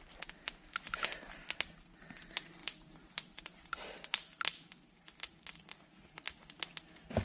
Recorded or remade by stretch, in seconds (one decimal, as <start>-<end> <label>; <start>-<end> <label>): 0.0-2.6 recorded; 2.6-6.3 remade; 6.3-7.2 recorded